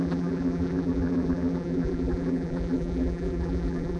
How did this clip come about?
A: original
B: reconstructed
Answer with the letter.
B